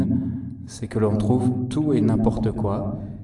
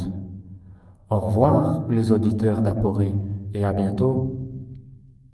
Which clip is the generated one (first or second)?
second